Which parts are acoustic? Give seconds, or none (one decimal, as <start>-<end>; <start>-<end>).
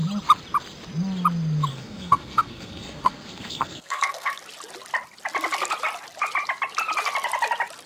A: 0.0-1.7; 4.3-7.9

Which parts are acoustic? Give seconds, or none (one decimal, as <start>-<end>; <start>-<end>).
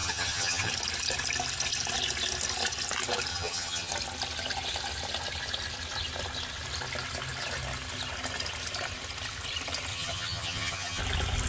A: 0.7-3.3; 3.9-9.9; 11.0-11.5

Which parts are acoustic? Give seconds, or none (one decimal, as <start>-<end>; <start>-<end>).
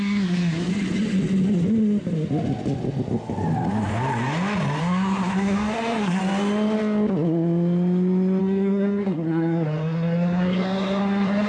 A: 0.7-4.8; 6.2-8.4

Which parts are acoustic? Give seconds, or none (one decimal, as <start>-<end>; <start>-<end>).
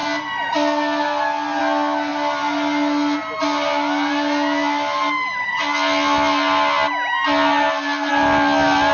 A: 0.0-8.9